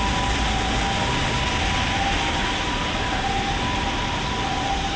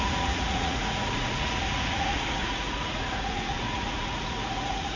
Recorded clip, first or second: first